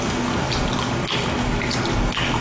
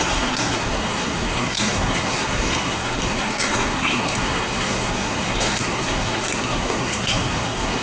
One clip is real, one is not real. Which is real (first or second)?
first